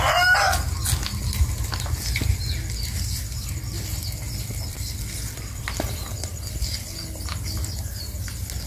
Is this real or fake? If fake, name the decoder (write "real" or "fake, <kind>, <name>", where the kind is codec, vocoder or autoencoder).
real